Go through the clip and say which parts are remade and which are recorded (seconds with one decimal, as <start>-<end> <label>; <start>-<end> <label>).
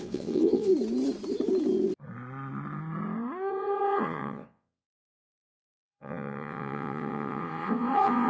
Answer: 0.0-0.7 remade; 0.7-3.5 recorded; 3.5-8.3 remade